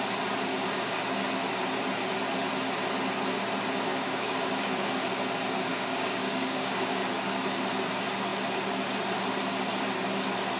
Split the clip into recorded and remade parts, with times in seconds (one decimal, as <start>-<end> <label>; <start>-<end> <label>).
0.0-0.5 recorded; 0.5-1.0 remade; 1.0-3.9 recorded; 3.9-4.5 remade; 4.5-5.7 recorded; 5.7-7.1 remade; 7.1-10.6 recorded